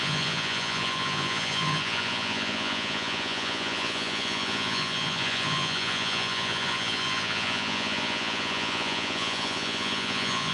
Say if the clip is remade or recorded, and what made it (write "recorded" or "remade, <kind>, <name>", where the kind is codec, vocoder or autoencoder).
remade, vocoder, Vocos